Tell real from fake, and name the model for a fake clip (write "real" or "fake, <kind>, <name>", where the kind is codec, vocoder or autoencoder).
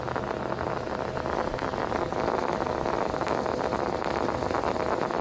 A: real